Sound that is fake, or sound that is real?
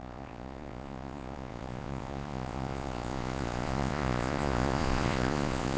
fake